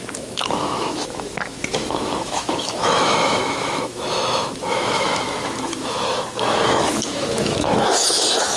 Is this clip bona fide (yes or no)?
no